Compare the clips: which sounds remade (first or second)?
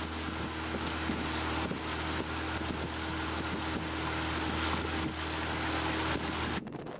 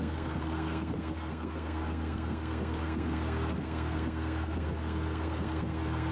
second